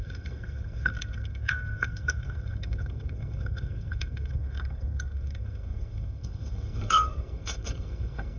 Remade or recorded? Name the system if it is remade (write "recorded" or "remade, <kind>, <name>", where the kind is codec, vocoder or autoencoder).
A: remade, codec, SNAC